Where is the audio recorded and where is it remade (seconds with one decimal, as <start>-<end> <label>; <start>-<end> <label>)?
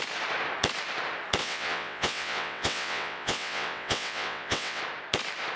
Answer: 0.0-1.4 recorded; 1.4-4.8 remade; 4.8-5.6 recorded